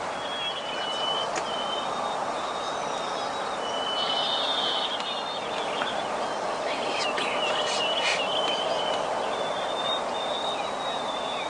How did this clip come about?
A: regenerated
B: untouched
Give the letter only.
B